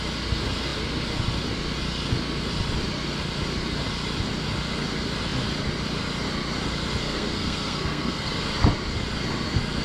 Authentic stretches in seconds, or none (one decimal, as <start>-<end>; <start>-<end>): 0.0-7.0; 8.3-9.8